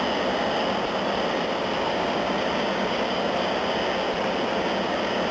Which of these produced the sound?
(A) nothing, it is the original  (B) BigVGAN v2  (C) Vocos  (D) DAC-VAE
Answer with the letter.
A